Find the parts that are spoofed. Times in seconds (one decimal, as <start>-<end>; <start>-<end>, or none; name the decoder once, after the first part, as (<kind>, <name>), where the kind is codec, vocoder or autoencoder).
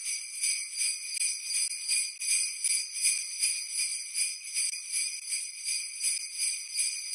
0.0-0.7 (vocoder, BigVGAN v2); 3.9-5.7